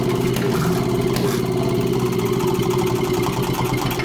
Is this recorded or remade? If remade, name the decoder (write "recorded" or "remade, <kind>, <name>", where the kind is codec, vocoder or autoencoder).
recorded